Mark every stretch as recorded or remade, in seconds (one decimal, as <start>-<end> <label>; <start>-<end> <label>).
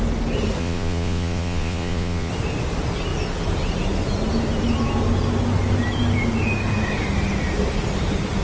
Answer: 0.0-0.6 recorded; 0.6-2.3 remade; 2.3-8.4 recorded